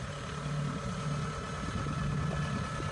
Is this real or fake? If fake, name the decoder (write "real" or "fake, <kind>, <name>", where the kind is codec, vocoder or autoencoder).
real